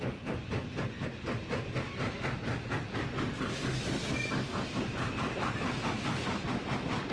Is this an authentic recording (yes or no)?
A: yes